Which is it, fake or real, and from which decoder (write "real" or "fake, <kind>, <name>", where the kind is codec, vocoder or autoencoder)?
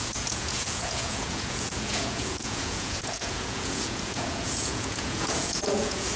fake, vocoder, Vocos